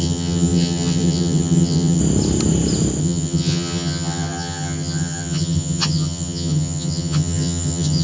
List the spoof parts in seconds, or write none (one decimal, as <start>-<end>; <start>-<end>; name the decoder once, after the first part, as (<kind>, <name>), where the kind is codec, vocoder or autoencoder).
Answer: 0.0-2.0 (vocoder, HiFi-GAN); 3.0-8.0